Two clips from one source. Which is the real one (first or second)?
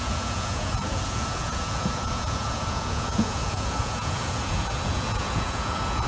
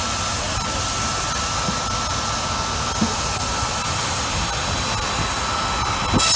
second